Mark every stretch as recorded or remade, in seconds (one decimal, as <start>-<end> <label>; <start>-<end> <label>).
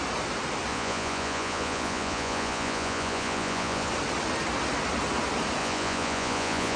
0.0-0.7 recorded; 0.7-3.9 remade; 3.9-5.6 recorded; 5.6-6.8 remade